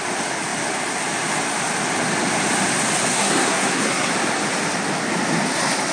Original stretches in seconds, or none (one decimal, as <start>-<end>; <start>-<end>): 0.0-3.1; 4.1-5.9

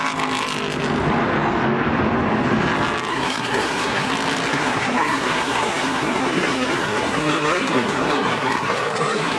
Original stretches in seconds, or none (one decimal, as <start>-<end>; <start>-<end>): 0.0-3.1; 4.1-4.5

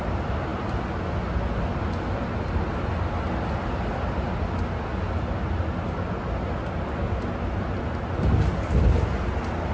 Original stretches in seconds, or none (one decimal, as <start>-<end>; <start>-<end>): 0.0-9.7

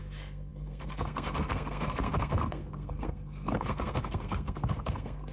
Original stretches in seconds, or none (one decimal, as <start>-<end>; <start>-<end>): none

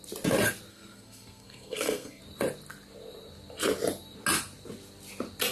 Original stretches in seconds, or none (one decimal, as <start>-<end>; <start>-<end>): 0.0-0.7; 2.2-5.5